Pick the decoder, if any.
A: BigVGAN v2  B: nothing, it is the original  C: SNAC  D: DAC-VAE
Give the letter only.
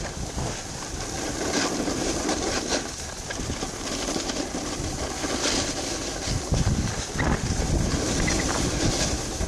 B